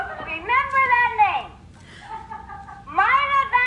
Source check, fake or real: real